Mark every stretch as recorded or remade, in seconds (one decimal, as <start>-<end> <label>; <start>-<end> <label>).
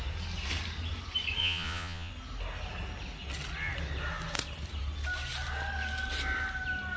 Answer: 0.0-1.4 recorded; 1.4-2.1 remade; 2.1-7.0 recorded